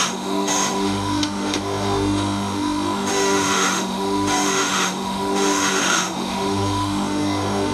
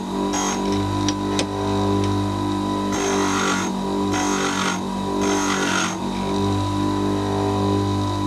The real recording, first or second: second